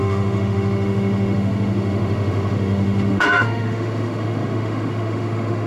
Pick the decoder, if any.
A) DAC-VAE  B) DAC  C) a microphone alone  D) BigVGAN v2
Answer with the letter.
A